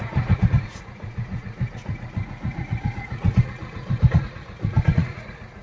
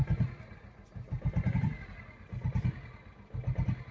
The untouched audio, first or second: second